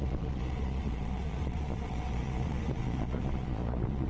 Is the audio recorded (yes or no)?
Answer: no